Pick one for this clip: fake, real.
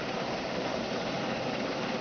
fake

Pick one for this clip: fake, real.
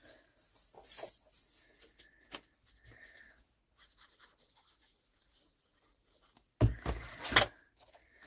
real